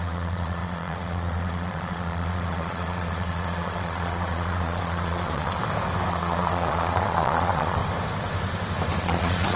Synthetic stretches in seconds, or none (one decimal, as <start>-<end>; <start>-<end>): 0.0-5.6; 6.1-7.8; 9.0-9.6